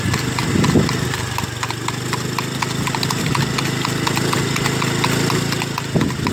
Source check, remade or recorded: recorded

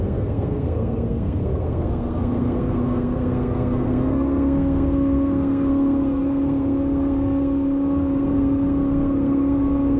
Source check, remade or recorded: remade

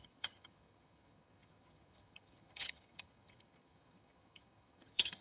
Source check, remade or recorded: remade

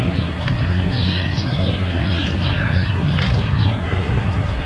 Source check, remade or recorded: remade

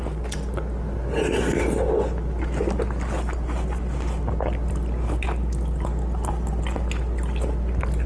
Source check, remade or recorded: recorded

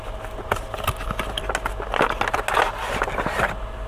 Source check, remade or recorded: recorded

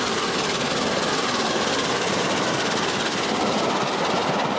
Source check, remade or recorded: recorded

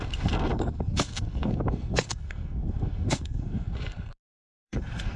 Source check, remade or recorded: remade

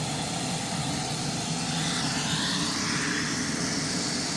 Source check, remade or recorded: recorded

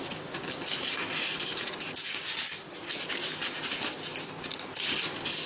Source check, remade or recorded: recorded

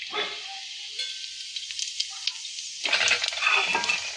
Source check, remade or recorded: recorded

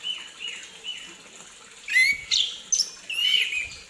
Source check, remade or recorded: recorded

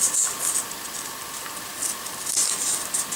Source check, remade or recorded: recorded